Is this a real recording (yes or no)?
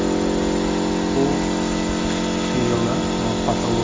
yes